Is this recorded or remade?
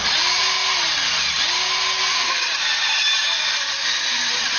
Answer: recorded